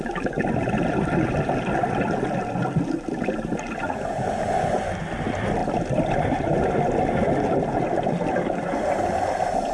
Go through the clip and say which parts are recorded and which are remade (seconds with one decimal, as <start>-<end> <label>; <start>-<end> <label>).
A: 0.0-3.8 recorded; 3.8-4.8 remade; 4.8-9.7 recorded